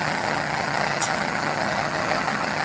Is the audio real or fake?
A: fake